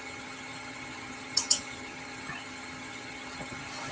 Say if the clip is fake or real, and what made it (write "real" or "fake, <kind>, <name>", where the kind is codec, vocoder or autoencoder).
fake, vocoder, HiFi-GAN